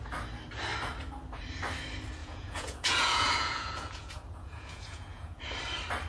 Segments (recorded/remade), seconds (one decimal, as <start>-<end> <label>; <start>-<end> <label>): 0.0-2.2 recorded; 2.2-5.4 remade; 5.4-6.1 recorded